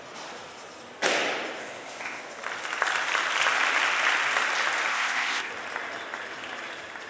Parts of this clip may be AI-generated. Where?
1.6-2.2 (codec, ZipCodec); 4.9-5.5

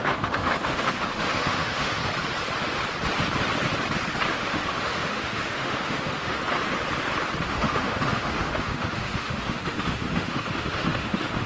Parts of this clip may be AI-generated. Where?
0.0-2.0 (autoencoder, DAC-VAE); 4.3-6.4; 7.4-11.5

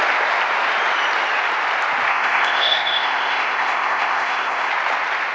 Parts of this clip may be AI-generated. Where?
2.1-4.7 (codec, ZipCodec)

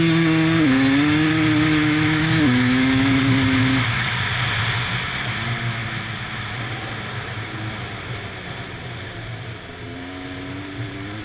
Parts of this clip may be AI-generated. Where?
1.8-3.2 (autoencoder, DAC-VAE)

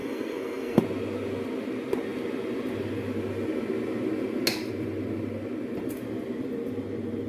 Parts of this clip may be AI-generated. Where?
0.0-0.8 (codec, SNAC)

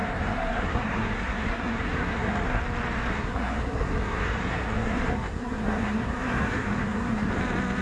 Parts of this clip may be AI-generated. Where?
0.0-2.6 (codec, SNAC); 3.1-7.3